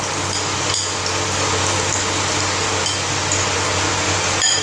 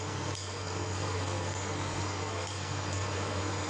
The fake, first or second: second